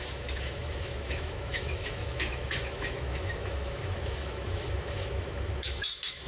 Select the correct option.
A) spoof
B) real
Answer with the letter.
A